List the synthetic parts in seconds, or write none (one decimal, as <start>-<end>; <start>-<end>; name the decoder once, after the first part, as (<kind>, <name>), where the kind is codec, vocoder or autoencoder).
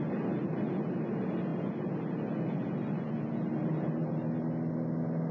none